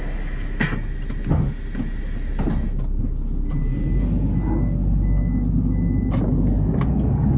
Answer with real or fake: real